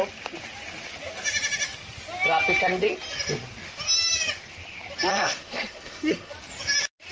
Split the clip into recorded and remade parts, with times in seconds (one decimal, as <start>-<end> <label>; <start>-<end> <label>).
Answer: 0.0-5.1 recorded; 5.1-6.3 remade; 6.3-7.1 recorded